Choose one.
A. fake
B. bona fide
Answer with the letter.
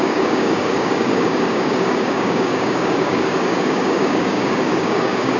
A